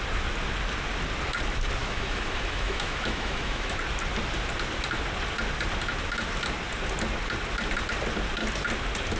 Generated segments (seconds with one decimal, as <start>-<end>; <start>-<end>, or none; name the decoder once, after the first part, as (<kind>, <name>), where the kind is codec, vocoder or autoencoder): 1.8-3.8 (autoencoder, DAC-VAE)

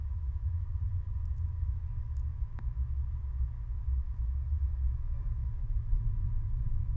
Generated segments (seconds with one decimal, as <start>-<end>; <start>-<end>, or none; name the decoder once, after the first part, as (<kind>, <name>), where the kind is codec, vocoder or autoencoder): 0.0-7.0 (autoencoder, DAC-VAE)

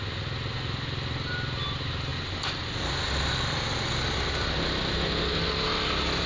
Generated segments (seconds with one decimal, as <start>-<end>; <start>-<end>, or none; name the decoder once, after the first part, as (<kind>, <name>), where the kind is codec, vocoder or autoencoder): none